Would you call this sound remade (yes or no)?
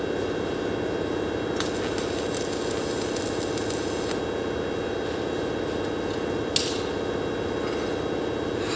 no